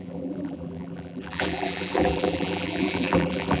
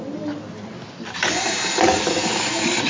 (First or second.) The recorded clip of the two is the second